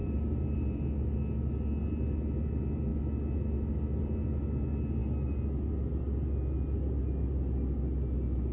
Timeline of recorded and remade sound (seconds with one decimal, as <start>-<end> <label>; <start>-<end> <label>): 0.0-0.9 remade; 0.9-8.5 recorded